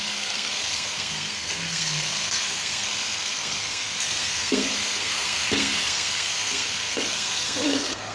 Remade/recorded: remade